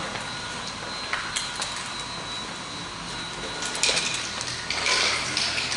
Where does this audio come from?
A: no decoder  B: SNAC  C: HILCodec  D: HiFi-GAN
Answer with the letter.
A